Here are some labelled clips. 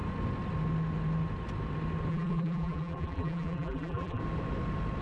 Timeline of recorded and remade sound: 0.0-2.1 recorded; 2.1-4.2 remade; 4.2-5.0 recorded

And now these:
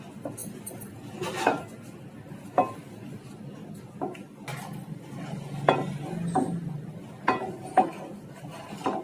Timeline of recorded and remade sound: 0.0-9.0 recorded

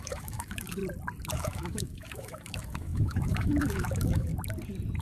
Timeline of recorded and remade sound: 0.0-0.8 remade; 0.8-1.3 recorded; 1.3-4.3 remade; 4.3-5.0 recorded

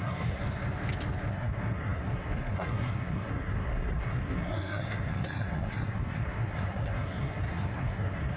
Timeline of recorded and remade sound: 0.0-0.4 remade; 0.4-1.3 recorded; 1.3-8.4 remade

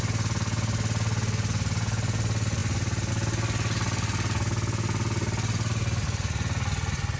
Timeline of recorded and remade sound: 0.0-7.2 recorded

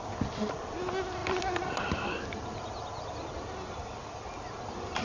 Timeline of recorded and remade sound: 0.0-5.0 recorded